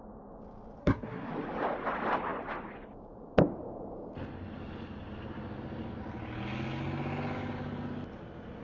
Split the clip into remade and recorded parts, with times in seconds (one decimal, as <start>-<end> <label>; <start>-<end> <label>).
0.0-0.8 recorded; 0.8-1.3 remade; 1.3-8.6 recorded